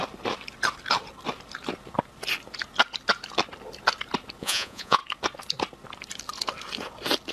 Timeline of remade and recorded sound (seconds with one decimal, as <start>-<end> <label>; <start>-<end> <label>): 0.0-4.4 recorded; 4.4-5.0 remade; 5.0-7.3 recorded